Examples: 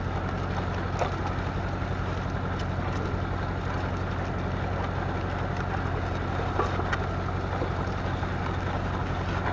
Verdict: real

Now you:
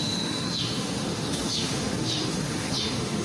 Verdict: fake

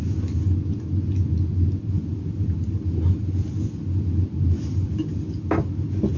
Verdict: real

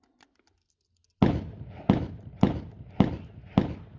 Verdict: real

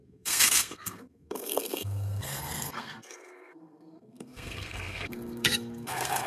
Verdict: fake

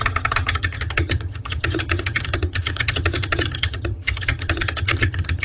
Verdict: fake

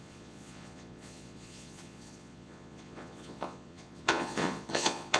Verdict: fake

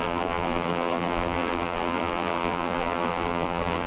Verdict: fake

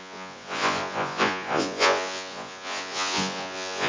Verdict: fake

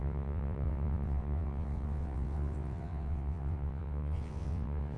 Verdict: fake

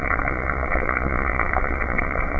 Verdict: fake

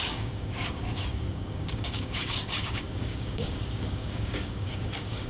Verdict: fake